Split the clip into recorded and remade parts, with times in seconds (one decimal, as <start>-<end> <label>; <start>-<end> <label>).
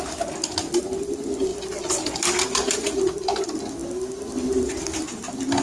0.0-5.6 recorded